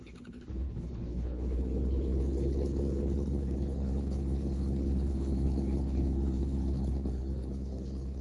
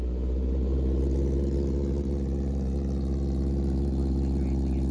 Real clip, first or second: second